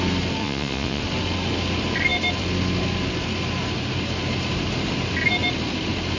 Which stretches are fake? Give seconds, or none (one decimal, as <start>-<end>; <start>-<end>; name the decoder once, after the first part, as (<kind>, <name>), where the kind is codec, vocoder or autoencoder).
0.4-1.0 (vocoder, Vocos)